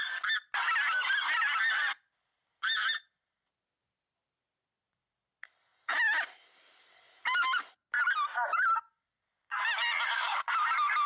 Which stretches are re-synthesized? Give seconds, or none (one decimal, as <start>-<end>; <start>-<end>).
none